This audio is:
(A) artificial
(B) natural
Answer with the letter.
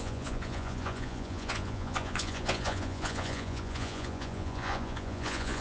A